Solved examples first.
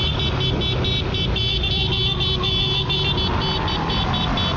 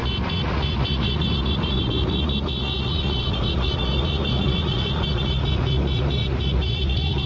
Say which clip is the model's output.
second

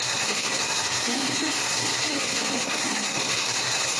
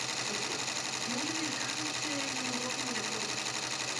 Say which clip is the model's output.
first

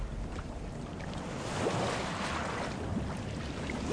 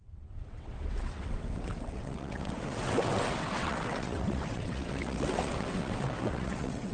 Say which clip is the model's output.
second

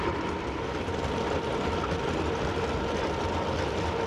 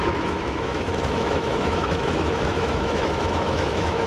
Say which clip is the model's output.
second